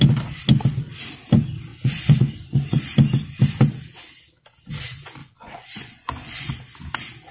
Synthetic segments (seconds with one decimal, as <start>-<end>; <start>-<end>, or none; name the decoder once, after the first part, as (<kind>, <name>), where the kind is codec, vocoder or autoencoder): 1.7-2.8 (vocoder, Vocos); 5.2-6.5